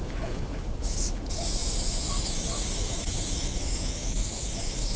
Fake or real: fake